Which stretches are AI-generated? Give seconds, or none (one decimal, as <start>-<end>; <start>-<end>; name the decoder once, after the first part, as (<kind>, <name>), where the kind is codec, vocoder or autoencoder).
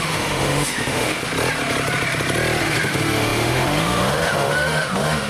0.0-1.3 (autoencoder, DAC-VAE); 2.6-5.3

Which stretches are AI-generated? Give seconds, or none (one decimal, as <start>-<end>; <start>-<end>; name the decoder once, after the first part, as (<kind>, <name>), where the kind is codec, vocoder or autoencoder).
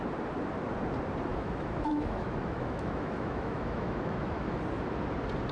1.3-4.6 (autoencoder, DAC-VAE)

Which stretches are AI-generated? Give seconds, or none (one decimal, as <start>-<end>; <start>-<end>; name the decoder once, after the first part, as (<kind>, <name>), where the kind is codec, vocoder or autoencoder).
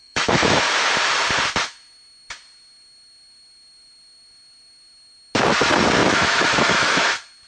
0.0-0.6 (autoencoder, DAC-VAE); 6.0-7.0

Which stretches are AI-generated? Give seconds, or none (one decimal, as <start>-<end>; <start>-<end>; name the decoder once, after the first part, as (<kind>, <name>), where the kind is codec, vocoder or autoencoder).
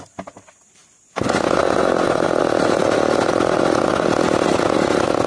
none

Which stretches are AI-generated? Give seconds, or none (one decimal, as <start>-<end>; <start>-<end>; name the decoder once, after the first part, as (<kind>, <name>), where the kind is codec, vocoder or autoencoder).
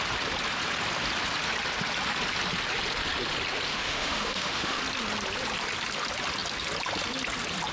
3.7-4.8 (autoencoder, DAC-VAE)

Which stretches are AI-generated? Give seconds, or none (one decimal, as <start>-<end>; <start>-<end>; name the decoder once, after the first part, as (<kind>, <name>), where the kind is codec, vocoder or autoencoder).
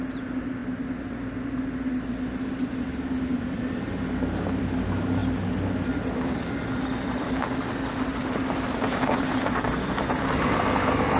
none